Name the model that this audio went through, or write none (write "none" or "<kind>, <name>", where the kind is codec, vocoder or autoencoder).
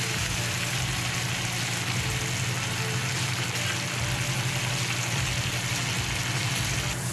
none